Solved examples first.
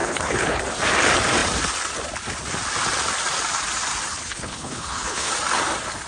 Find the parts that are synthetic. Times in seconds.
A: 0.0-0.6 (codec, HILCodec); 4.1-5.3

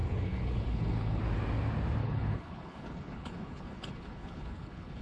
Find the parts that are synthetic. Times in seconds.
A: 0.0-1.2 (codec, HILCodec); 2.0-5.0